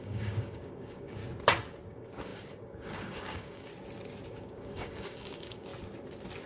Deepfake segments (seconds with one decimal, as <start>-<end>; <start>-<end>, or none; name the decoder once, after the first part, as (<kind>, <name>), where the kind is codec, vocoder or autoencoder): 0.0-1.2 (codec, DAC); 1.9-3.7; 4.3-5.7